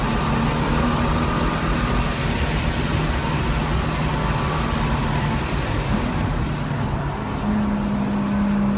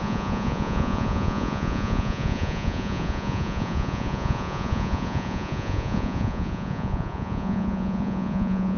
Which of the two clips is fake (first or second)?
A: second